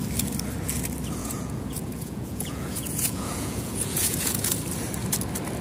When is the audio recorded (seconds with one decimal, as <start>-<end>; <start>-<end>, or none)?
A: 0.0-1.2; 4.6-5.6